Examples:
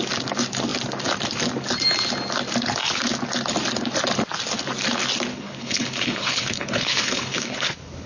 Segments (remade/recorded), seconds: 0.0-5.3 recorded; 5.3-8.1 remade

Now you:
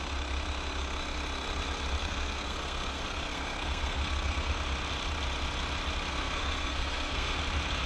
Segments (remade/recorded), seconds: 0.0-2.0 recorded; 2.0-4.5 remade; 4.5-6.1 recorded; 6.1-7.4 remade; 7.4-7.9 recorded

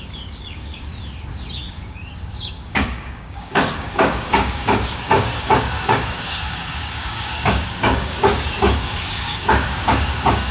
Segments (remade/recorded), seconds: 0.0-0.9 remade; 0.9-1.7 recorded; 1.7-10.5 remade